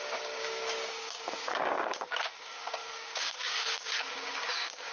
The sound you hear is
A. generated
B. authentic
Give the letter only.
A